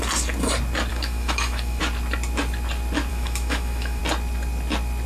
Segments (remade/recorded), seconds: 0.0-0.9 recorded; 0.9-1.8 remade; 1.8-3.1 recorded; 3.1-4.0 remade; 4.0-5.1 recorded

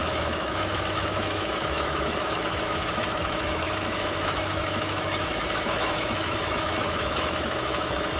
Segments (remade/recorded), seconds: 0.0-8.2 remade

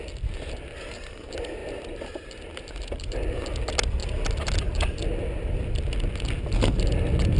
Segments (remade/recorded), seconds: 0.0-7.4 recorded

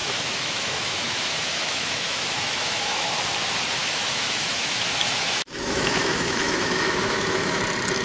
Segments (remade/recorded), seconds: 0.0-3.2 remade; 3.2-3.8 recorded; 3.8-7.6 remade; 7.6-8.0 recorded

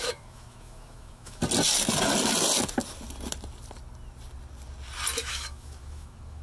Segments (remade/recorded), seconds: 0.0-1.4 remade; 1.4-5.2 recorded; 5.2-6.4 remade

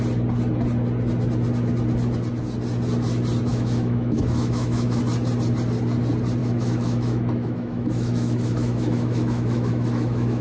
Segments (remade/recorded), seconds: 0.0-3.5 recorded; 3.5-5.0 remade; 5.0-6.4 recorded; 6.4-10.4 remade